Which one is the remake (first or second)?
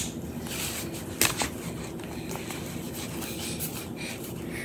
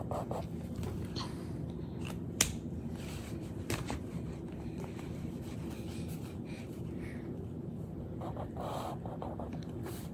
second